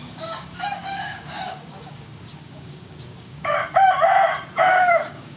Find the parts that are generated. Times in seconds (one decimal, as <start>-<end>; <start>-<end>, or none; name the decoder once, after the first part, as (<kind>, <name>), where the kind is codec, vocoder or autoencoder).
0.0-3.6 (codec, DAC); 4.7-5.4